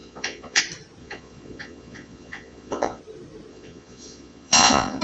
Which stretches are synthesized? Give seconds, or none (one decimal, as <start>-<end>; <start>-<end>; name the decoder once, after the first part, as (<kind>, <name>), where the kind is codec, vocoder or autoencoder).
0.0-0.6 (vocoder, Vocos); 1.0-3.0; 3.5-5.0